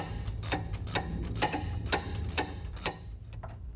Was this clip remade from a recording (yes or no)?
no